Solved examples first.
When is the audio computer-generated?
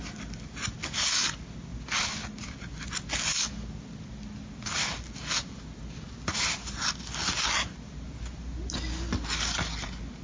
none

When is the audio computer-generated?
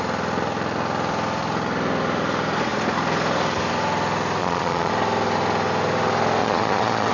4.4-4.9 (vocoder, Vocos); 6.4-7.1